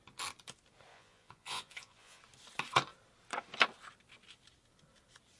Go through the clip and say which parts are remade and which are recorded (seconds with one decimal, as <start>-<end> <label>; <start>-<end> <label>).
0.0-0.9 recorded; 0.9-2.2 remade; 2.2-5.4 recorded